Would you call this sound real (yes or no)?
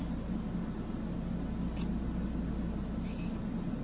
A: yes